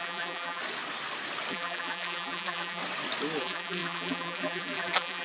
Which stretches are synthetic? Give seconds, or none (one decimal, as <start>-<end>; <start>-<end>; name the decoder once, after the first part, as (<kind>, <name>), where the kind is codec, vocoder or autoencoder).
0.0-0.6 (vocoder, BigVGAN v2); 1.5-2.8; 3.4-5.2